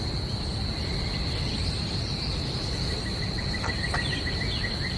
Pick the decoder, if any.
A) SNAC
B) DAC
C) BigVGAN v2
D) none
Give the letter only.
D